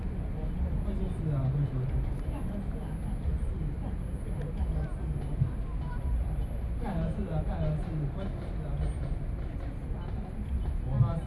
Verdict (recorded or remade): recorded